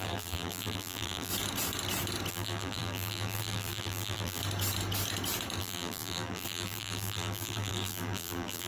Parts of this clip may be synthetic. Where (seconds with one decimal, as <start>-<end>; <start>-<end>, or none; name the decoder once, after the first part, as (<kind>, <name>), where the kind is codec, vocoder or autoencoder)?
0.0-1.3 (vocoder, BigVGAN v2); 2.3-4.4; 5.6-8.7